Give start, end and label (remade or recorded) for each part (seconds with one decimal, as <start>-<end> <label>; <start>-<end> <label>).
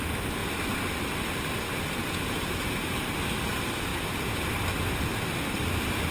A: 0.0-2.0 recorded; 2.0-3.0 remade; 3.0-3.9 recorded; 3.9-4.5 remade; 4.5-6.1 recorded